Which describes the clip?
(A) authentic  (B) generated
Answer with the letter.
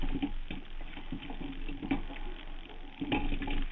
A